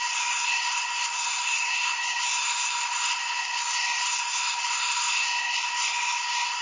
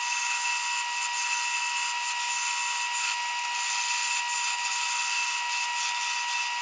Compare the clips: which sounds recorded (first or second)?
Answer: second